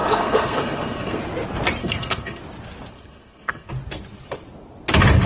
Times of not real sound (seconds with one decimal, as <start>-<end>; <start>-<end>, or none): 0.0-1.2; 1.8-2.4; 2.9-3.7